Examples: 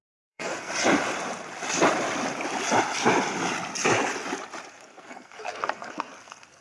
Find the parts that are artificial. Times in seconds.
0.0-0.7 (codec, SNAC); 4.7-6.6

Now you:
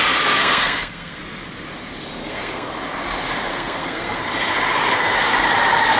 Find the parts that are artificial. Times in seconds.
0.4-1.2 (codec, SNAC); 2.2-2.7; 3.5-4.2